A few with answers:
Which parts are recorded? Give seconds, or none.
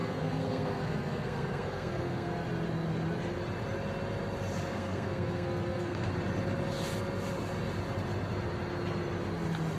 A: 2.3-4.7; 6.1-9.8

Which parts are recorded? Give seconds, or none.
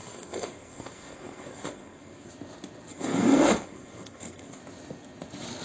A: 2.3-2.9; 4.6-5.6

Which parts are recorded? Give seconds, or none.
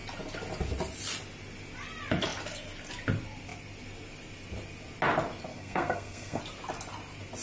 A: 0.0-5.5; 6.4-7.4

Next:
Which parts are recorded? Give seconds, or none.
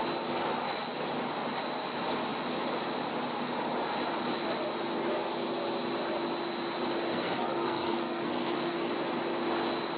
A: 0.0-7.1; 8.9-10.0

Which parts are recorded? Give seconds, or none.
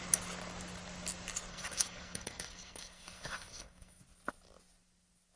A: 0.0-1.5; 4.0-5.4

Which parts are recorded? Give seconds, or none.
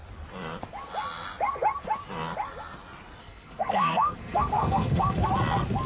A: 0.0-3.2; 5.3-5.9